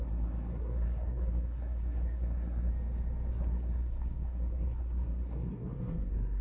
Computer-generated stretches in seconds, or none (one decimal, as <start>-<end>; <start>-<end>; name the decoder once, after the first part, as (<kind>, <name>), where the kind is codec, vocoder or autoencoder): 0.0-2.7 (codec, SNAC); 3.3-6.4

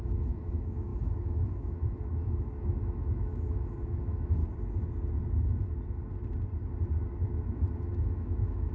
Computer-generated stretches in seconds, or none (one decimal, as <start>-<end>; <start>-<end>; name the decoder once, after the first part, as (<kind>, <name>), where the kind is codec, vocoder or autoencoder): 0.0-4.4 (autoencoder, DAC-VAE); 7.8-8.7

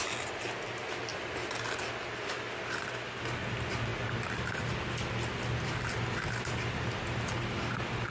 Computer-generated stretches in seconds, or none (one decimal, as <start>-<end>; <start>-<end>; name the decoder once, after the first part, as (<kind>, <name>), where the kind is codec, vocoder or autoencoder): none

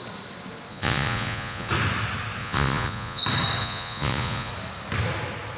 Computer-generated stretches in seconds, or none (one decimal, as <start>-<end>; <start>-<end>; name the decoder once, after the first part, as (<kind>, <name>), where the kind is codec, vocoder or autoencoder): 0.7-1.7 (vocoder, Vocos); 2.4-3.2; 3.6-4.5

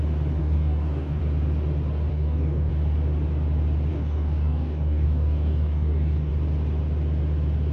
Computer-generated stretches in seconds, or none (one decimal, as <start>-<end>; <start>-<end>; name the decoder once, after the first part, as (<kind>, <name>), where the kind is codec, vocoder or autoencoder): 0.4-1.2 (codec, DAC); 2.1-2.7; 3.9-6.3